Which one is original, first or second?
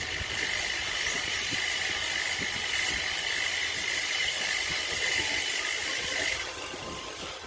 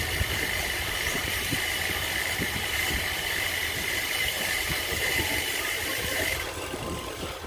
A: first